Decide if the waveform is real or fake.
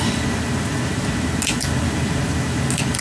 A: real